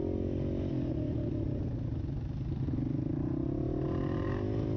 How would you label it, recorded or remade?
recorded